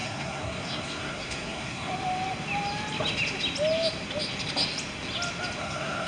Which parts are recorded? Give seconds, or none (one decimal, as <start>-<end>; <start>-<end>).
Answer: 1.9-5.6